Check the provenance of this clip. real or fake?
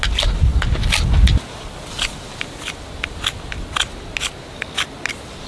real